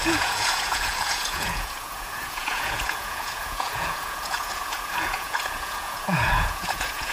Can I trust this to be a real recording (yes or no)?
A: no